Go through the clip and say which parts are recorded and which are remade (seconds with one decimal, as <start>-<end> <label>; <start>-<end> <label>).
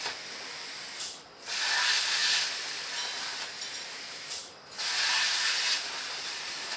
0.0-6.8 recorded